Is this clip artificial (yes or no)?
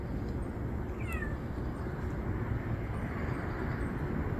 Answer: no